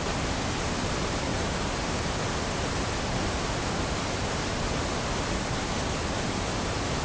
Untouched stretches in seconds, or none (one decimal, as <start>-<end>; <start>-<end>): 0.0-7.0